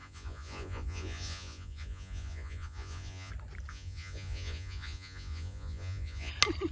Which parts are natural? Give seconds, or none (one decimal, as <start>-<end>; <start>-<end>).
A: 3.3-3.7; 6.3-6.7